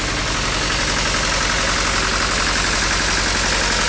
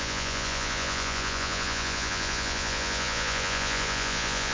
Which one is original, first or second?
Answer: first